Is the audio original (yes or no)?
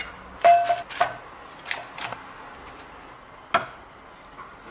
yes